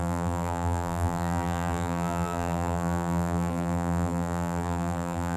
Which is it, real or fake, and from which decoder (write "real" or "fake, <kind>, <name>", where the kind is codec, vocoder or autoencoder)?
fake, vocoder, BigVGAN v2